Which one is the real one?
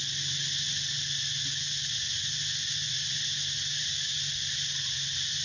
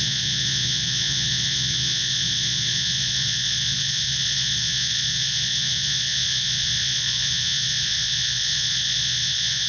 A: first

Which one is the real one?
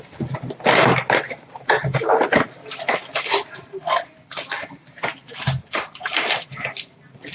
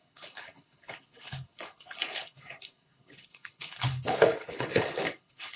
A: first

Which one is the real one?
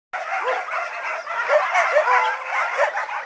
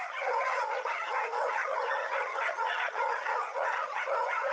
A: first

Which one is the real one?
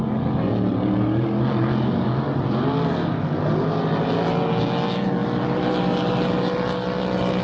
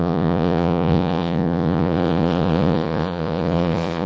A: first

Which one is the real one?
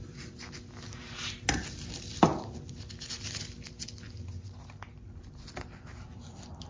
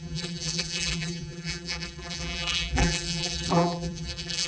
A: first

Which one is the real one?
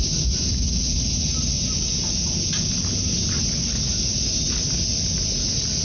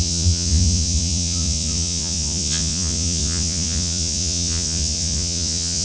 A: first